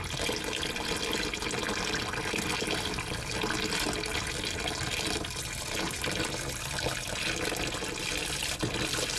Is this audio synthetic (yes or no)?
no